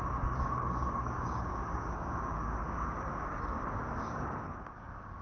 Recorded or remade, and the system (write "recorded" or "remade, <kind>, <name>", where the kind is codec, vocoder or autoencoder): remade, codec, DAC